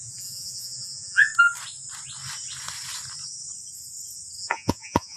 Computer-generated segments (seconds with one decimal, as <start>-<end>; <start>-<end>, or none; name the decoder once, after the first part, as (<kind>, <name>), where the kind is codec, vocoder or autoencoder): 0.0-1.3 (vocoder, Vocos); 4.4-5.2